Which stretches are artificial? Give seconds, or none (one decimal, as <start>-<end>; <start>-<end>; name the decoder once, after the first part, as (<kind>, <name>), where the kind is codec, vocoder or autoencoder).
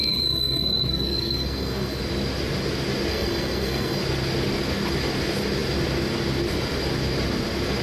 0.0-2.0 (codec, SNAC); 3.1-4.0